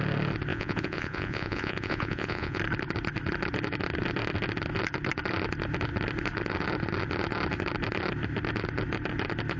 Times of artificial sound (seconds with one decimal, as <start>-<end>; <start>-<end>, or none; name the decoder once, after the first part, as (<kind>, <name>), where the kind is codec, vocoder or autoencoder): 0.5-2.6 (vocoder, Vocos)